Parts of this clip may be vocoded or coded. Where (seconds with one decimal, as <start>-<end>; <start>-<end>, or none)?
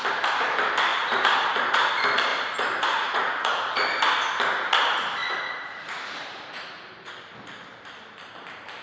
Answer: 0.9-1.9; 2.3-3.7; 5.2-7.1